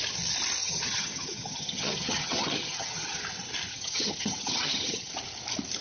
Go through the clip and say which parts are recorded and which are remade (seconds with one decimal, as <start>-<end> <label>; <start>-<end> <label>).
0.0-0.6 recorded; 0.6-3.2 remade; 3.2-3.7 recorded; 3.7-5.1 remade; 5.1-5.8 recorded